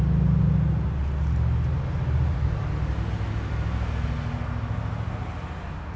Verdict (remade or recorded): recorded